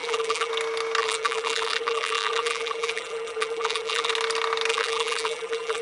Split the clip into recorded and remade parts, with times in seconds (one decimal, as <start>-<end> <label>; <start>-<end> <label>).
0.0-0.5 remade; 0.5-1.0 recorded; 1.0-4.1 remade; 4.1-4.7 recorded; 4.7-5.8 remade